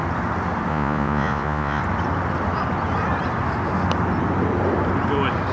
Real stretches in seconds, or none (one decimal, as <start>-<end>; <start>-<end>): 0.0-0.7; 1.8-5.5